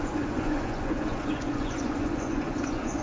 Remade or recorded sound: remade